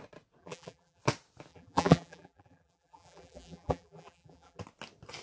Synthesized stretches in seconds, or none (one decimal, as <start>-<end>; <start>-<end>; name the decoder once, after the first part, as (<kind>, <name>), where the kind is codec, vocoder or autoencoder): 0.4-1.0 (vocoder, BigVGAN v2); 1.5-4.6